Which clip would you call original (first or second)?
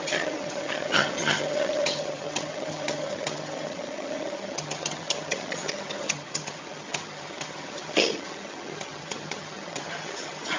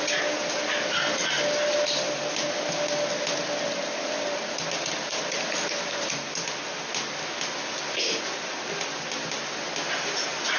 second